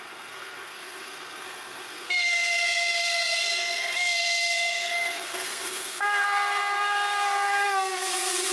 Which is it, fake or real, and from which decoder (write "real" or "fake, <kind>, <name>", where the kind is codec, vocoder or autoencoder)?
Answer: fake, codec, SNAC